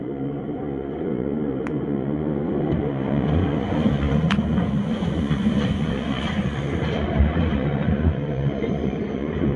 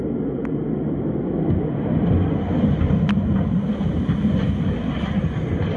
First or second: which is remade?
first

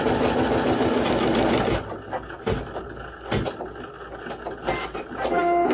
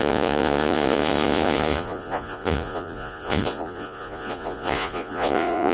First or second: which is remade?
second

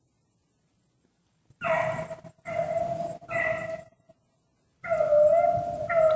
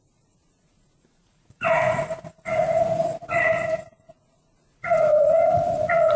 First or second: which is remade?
second